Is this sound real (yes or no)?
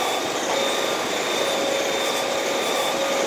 yes